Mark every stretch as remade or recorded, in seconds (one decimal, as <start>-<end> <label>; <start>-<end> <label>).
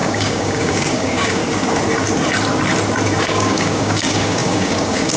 0.0-1.4 remade; 1.4-3.2 recorded; 3.2-5.2 remade